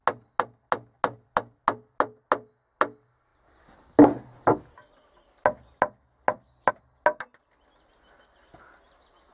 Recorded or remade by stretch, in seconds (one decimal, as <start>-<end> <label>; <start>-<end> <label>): 0.0-9.3 recorded